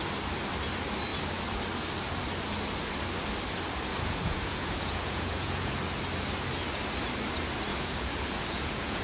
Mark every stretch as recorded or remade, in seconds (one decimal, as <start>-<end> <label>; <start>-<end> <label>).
0.0-3.9 recorded; 3.9-5.7 remade; 5.7-7.7 recorded; 7.7-9.0 remade